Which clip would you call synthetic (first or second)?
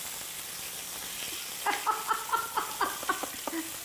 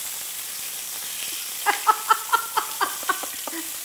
second